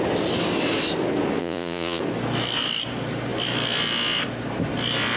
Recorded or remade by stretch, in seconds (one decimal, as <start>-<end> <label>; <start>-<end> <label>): 0.0-1.4 recorded; 1.4-2.0 remade; 2.0-5.2 recorded